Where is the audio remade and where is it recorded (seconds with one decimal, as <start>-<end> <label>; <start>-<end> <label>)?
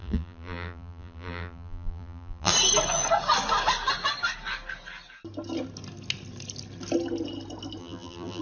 0.0-2.5 remade; 2.5-7.8 recorded; 7.8-8.4 remade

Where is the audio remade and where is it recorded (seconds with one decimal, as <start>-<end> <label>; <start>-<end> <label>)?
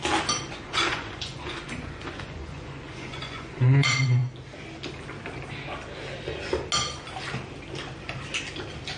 0.0-0.5 recorded; 0.5-4.2 remade; 4.2-9.0 recorded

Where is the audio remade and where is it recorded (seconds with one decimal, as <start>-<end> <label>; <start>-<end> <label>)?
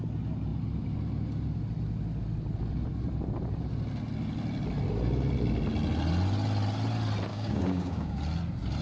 0.0-7.3 recorded; 7.3-8.2 remade; 8.2-8.8 recorded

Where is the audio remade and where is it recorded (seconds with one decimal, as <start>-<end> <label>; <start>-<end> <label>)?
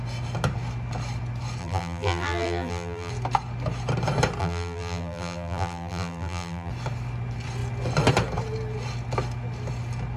0.0-1.6 recorded; 1.6-3.1 remade; 3.1-4.4 recorded; 4.4-6.7 remade; 6.7-10.2 recorded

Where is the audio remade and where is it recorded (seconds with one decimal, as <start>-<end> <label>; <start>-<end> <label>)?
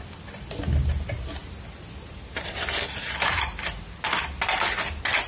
0.0-5.3 recorded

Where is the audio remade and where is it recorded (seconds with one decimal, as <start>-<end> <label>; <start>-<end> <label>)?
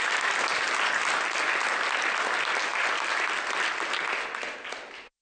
0.0-5.2 recorded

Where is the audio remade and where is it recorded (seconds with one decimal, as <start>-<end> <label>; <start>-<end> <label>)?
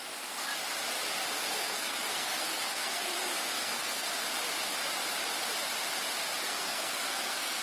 0.0-0.5 remade; 0.5-1.4 recorded; 1.4-4.1 remade; 4.1-6.4 recorded; 6.4-7.6 remade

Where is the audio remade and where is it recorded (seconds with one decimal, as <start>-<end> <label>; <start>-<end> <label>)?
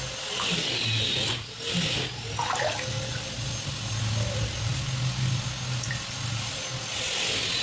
0.0-7.6 recorded